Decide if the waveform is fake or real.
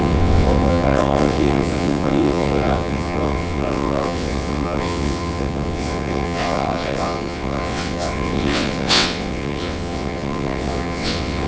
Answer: fake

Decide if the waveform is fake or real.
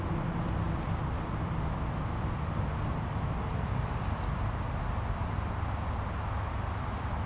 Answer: real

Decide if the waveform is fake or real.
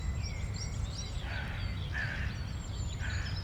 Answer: real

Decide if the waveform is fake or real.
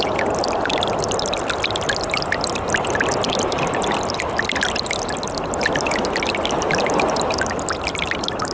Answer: real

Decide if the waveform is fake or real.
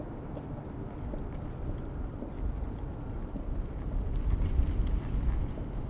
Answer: real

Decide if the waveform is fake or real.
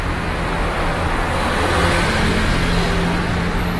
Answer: real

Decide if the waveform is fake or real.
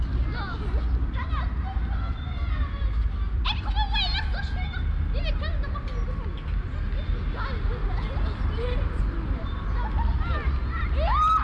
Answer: real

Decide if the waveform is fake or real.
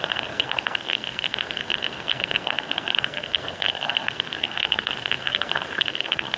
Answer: fake